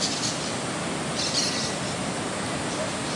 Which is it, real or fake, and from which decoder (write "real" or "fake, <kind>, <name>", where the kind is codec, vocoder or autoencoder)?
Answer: real